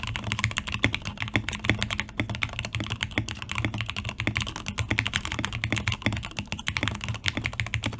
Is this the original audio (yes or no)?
yes